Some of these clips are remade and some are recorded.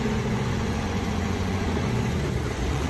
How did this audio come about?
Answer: remade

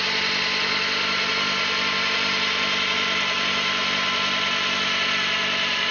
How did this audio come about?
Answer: recorded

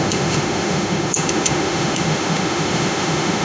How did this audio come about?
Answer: remade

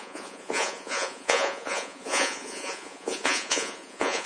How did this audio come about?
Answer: remade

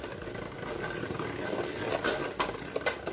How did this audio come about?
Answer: recorded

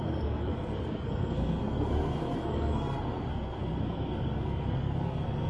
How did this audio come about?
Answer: remade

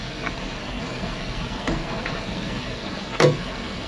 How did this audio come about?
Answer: remade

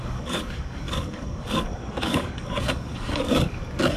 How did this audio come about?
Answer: remade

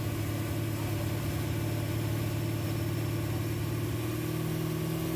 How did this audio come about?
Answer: recorded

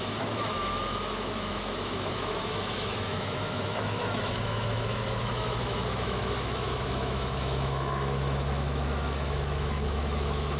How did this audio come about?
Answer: remade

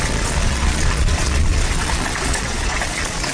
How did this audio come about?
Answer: remade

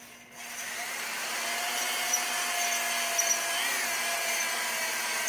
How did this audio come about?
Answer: recorded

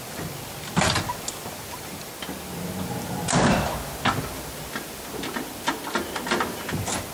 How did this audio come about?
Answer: recorded